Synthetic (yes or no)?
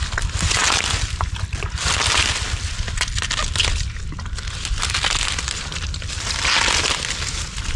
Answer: no